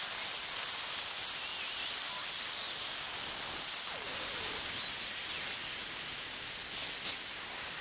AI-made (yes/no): no